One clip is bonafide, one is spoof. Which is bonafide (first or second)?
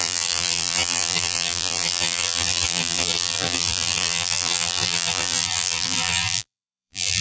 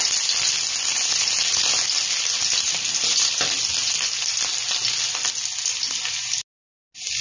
second